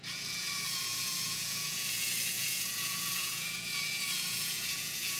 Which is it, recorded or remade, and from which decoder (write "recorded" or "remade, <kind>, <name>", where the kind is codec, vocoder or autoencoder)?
remade, vocoder, Vocos